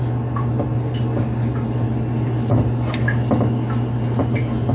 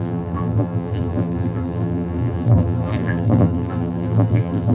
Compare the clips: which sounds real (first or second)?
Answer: first